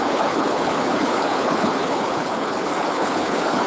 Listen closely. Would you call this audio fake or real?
fake